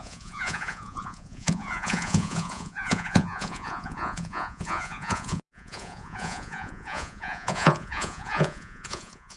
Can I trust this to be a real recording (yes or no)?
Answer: no